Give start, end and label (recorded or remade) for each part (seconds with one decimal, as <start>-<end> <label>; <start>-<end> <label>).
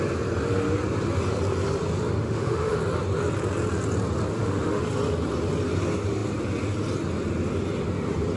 0.0-2.2 recorded; 2.2-2.8 remade; 2.8-4.3 recorded; 4.3-4.8 remade; 4.8-8.4 recorded